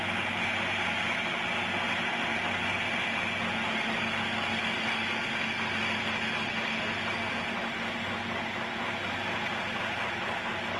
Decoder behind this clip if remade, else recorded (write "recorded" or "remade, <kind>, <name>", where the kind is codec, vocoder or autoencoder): recorded